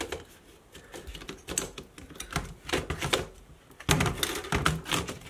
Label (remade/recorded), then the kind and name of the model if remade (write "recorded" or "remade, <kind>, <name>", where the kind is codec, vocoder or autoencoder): recorded